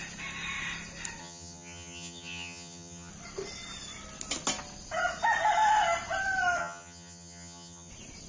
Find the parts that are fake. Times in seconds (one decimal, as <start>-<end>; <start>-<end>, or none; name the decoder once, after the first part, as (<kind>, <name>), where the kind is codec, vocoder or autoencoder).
1.2-3.1 (vocoder, HiFi-GAN); 6.6-7.9